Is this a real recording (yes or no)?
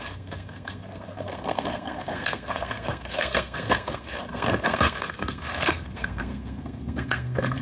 no